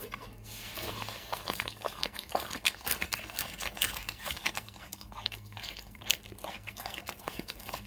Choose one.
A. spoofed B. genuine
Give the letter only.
A